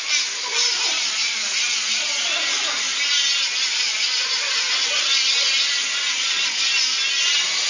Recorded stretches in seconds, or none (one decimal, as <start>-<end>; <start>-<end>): 0.0-7.7